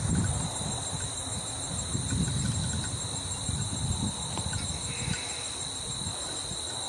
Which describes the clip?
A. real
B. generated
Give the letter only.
A